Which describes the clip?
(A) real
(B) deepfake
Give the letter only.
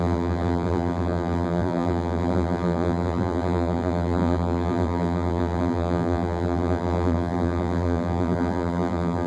B